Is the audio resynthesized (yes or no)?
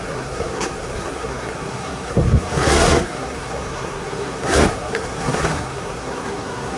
yes